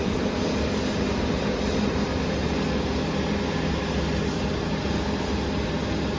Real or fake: real